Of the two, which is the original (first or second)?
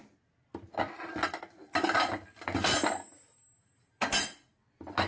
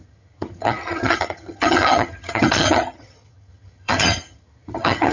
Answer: first